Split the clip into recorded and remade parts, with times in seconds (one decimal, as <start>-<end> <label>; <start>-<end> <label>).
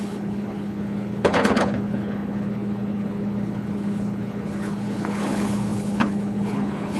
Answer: 0.0-7.0 remade